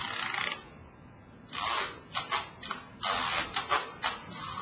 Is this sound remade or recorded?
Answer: recorded